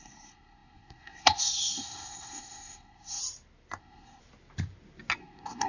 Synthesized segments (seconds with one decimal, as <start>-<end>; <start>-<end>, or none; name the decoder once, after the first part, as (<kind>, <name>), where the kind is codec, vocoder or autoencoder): 0.0-3.2 (codec, SNAC); 3.8-4.2; 5.2-5.7